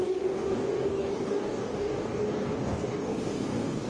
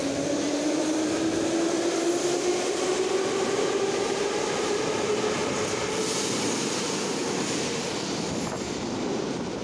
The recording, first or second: second